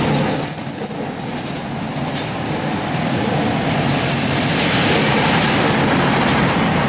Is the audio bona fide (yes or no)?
yes